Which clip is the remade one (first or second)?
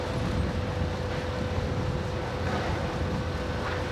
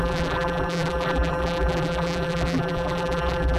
second